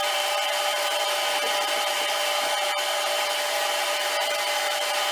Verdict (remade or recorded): recorded